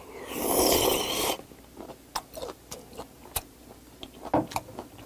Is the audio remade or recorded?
recorded